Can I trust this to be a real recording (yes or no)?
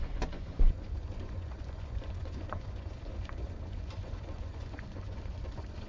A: no